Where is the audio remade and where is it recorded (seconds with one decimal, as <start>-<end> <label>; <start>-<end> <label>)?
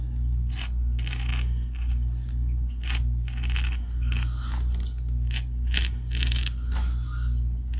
0.0-7.8 recorded